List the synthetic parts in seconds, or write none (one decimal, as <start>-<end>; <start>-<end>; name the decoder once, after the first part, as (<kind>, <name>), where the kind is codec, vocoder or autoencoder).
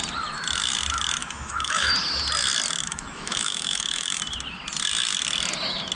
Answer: 1.2-1.9 (autoencoder, DAC-VAE); 2.8-4.2